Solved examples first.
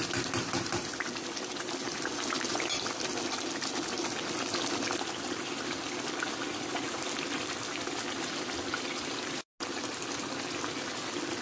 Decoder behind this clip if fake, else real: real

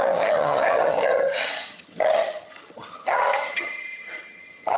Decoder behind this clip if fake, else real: fake, vocoder, HiFi-GAN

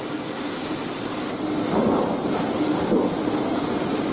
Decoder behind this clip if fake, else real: real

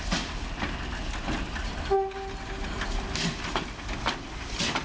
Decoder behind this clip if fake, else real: real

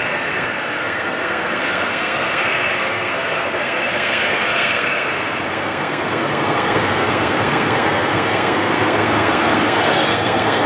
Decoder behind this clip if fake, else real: fake, codec, SNAC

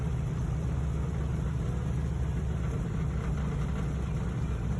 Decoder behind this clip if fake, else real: real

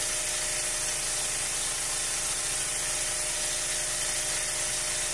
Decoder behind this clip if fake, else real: fake, vocoder, BigVGAN v2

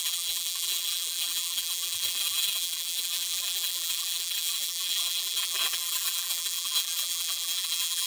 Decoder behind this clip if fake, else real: fake, vocoder, BigVGAN v2